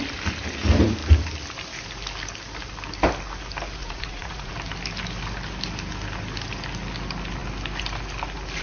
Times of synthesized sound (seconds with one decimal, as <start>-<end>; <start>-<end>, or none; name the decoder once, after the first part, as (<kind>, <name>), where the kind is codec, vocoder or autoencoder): 3.8-4.5 (vocoder, Vocos)